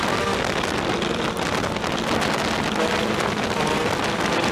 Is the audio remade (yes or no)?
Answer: no